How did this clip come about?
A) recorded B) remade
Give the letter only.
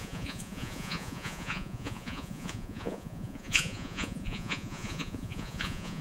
B